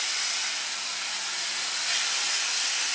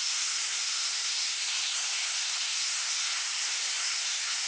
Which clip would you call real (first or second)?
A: first